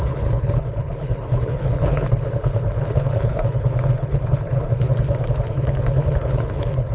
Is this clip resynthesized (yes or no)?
yes